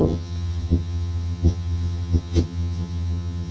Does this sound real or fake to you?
fake